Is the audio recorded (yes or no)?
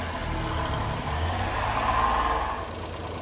yes